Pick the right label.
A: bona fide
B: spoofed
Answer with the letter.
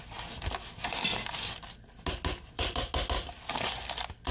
A